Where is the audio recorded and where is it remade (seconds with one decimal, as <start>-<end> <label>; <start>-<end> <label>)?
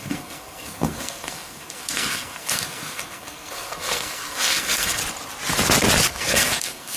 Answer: 0.0-5.0 remade; 5.0-6.1 recorded; 6.1-7.0 remade